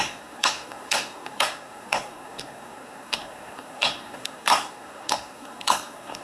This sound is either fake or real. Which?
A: fake